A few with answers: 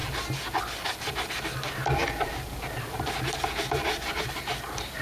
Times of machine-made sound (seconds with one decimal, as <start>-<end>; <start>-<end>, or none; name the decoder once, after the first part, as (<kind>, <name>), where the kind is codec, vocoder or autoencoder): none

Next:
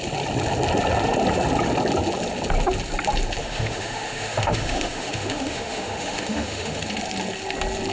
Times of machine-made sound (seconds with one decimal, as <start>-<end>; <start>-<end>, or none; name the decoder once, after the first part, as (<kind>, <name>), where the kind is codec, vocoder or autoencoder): 3.4-6.8 (autoencoder, DAC-VAE)

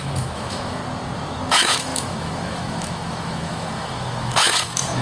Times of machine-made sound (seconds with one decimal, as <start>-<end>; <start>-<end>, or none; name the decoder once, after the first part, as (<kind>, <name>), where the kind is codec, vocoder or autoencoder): 0.0-0.8 (autoencoder, DAC-VAE); 1.5-5.0